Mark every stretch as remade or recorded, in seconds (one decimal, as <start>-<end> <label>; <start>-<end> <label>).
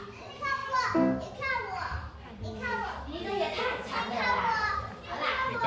0.0-0.6 remade; 0.6-4.0 recorded; 4.0-5.7 remade